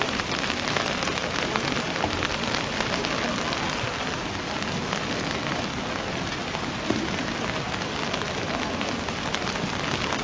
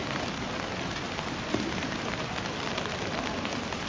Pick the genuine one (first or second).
first